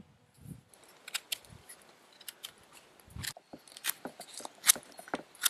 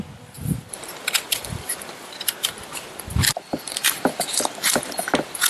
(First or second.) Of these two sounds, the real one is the first